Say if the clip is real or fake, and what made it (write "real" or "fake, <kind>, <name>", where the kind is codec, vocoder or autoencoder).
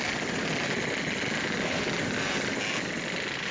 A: real